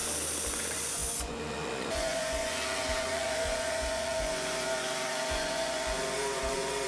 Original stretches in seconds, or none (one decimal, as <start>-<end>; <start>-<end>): 0.0-0.5